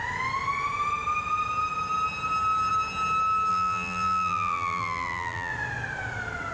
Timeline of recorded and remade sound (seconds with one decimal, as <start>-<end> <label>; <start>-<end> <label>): 0.0-3.5 recorded; 3.5-5.5 remade; 5.5-6.5 recorded